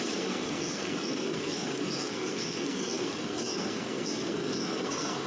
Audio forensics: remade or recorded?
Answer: remade